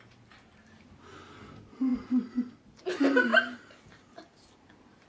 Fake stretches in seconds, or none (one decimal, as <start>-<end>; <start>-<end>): none